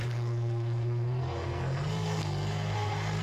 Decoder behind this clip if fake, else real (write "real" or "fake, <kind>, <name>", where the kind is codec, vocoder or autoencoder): fake, codec, SNAC